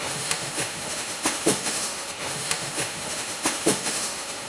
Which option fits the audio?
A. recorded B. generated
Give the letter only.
B